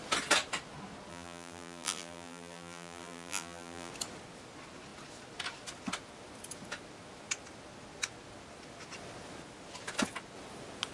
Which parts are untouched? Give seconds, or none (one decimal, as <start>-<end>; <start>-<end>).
0.0-1.1; 3.9-10.9